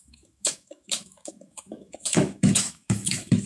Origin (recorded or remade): remade